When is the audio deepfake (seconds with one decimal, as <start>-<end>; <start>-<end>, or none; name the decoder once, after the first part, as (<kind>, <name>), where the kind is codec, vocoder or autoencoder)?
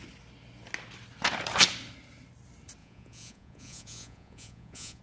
2.8-5.0 (vocoder, Vocos)